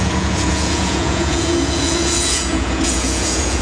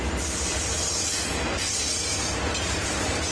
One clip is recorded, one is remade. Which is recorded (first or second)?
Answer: second